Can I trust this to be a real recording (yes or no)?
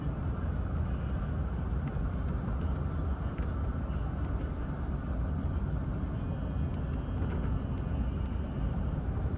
yes